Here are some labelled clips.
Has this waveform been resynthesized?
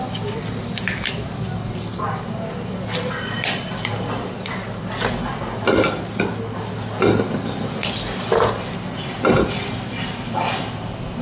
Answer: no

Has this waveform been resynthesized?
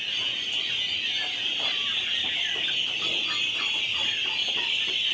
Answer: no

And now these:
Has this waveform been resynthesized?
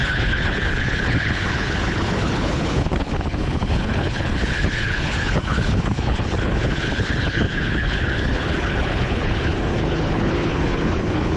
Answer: yes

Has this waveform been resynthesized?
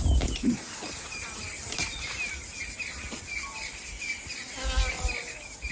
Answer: no